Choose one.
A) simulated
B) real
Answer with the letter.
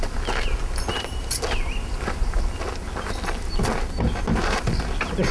B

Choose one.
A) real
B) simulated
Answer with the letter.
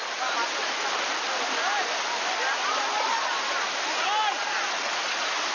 A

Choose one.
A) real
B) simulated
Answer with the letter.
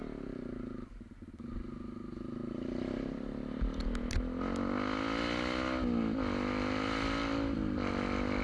A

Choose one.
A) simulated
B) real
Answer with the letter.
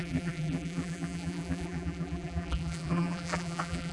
A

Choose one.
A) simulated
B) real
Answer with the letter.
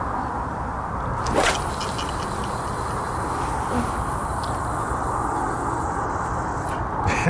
B